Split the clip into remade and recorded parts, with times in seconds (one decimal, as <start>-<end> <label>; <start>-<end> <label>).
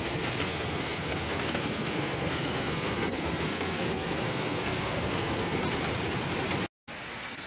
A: 0.0-5.6 remade; 5.6-7.1 recorded; 7.1-7.5 remade